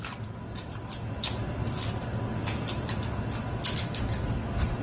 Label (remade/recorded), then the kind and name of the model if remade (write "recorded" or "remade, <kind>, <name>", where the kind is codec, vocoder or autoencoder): recorded